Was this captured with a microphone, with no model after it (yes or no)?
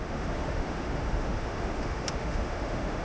no